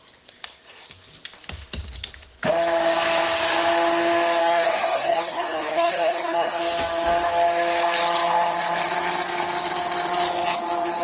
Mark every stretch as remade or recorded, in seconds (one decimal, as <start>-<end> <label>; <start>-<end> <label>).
0.0-4.4 recorded; 4.4-6.6 remade; 6.6-11.0 recorded